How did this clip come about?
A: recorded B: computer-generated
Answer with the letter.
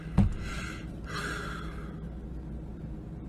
A